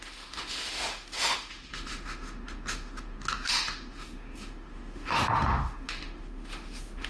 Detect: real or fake fake